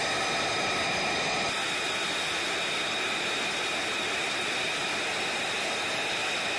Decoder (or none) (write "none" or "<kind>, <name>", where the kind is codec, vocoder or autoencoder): none